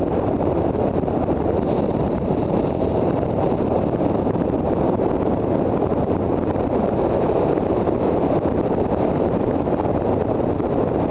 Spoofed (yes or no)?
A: yes